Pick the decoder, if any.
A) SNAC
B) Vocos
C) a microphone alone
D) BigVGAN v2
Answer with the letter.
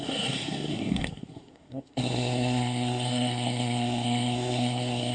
A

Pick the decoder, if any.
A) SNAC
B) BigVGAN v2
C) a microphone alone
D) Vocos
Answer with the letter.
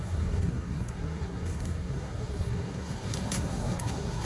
A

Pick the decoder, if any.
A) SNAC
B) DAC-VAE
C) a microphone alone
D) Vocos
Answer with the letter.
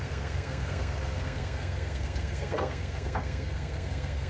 A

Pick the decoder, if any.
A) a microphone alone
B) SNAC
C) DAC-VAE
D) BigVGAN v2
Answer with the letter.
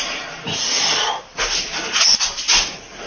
A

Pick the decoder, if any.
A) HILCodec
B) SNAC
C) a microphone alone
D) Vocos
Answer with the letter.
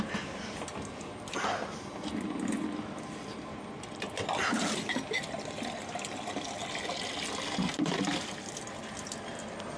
C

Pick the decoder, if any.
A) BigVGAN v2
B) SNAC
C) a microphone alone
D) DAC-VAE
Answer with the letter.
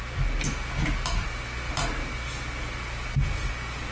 C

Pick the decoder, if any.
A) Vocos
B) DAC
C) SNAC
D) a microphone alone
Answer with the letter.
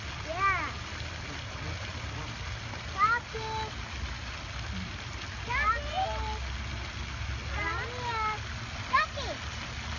D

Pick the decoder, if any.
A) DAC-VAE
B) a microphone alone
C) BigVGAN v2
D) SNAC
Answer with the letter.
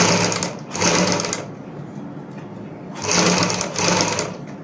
B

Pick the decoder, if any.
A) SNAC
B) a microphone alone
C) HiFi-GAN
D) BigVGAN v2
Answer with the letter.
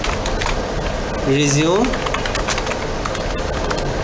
B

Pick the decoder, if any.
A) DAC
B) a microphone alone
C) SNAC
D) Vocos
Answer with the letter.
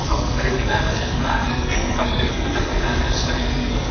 C